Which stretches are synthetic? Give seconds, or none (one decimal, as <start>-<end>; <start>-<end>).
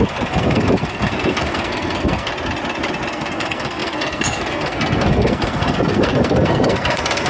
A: 0.0-2.3; 3.1-7.3